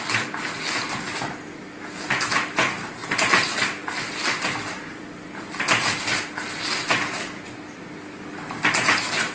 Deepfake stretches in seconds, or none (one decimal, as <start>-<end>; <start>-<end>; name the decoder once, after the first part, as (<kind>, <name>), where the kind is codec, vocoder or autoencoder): none